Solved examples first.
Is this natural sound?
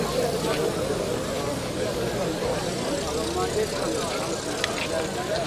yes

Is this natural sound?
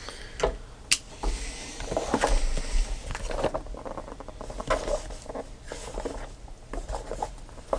yes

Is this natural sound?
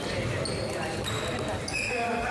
yes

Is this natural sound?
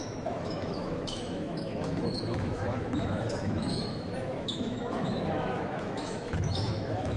no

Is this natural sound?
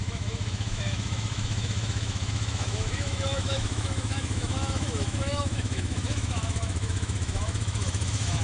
no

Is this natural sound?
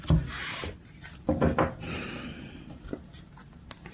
yes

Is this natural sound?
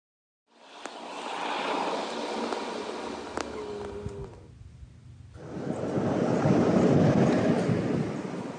yes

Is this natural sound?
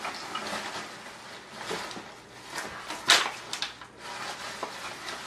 yes